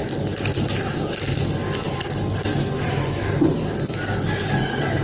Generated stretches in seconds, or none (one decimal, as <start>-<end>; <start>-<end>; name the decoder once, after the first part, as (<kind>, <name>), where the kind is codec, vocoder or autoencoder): none

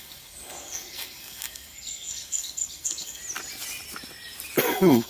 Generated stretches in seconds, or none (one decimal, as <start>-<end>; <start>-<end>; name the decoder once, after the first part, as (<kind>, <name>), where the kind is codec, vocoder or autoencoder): 0.0-3.2 (codec, SNAC); 4.6-5.1

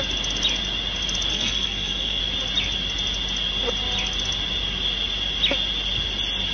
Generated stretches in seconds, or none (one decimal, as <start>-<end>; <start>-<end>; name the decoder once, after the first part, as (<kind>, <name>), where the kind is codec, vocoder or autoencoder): 1.3-2.2 (codec, SNAC)

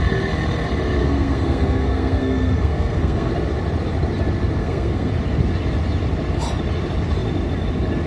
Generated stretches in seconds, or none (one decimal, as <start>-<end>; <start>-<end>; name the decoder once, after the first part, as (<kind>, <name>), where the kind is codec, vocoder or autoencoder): 1.0-3.3 (codec, SNAC); 4.6-5.1

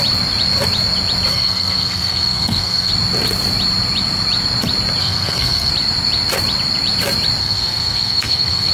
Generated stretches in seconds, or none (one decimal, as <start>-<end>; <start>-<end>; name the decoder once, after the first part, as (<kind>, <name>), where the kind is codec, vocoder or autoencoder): 1.3-2.9 (codec, SNAC); 5.0-5.7; 7.4-8.7

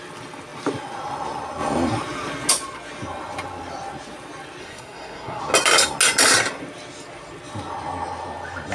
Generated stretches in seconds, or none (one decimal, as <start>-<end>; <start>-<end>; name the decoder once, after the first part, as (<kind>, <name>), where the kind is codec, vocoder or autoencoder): 4.6-5.4 (codec, SNAC)

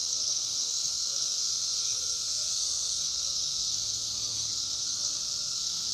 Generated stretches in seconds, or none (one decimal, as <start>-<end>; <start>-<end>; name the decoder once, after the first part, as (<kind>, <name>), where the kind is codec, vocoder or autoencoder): 0.0-5.9 (codec, SNAC)